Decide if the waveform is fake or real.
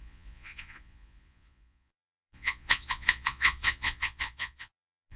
fake